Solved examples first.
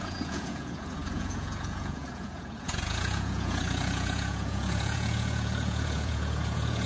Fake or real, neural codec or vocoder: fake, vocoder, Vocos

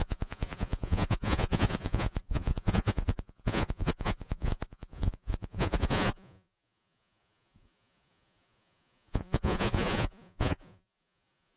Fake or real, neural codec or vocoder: fake, vocoder, Vocos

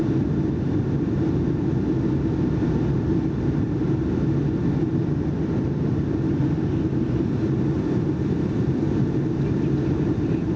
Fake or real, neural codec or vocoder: real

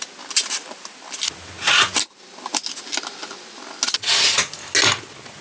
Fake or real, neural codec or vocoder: real